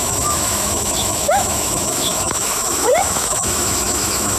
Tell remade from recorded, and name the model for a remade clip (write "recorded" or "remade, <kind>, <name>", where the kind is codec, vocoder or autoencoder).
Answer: remade, autoencoder, DAC-VAE